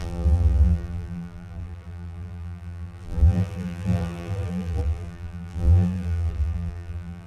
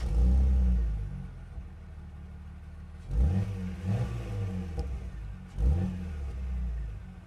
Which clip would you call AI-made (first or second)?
first